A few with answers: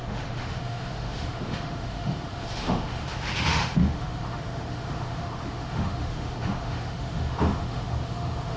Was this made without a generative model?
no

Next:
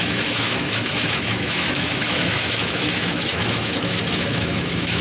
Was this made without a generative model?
no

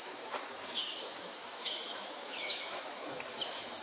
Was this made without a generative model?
no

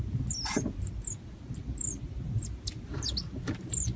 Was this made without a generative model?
yes